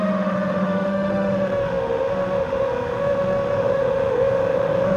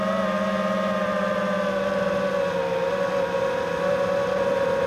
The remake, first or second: first